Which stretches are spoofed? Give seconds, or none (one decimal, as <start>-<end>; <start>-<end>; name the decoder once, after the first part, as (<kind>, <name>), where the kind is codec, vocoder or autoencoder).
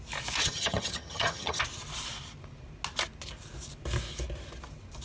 0.4-1.6 (vocoder, HiFi-GAN)